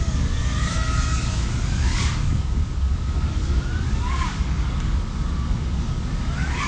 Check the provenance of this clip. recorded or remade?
remade